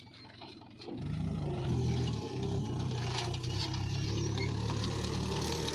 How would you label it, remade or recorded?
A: recorded